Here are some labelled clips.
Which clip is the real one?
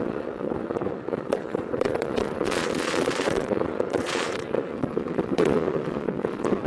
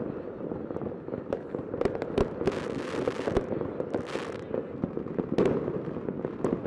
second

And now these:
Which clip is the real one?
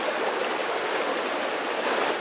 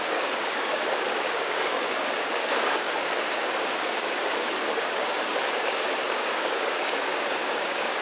first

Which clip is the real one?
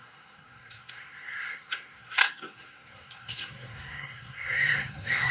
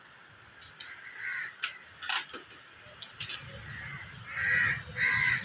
second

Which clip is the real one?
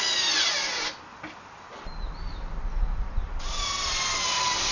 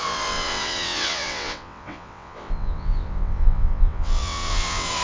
first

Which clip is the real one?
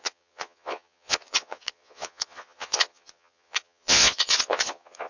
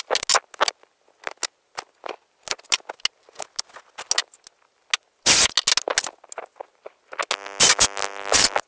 second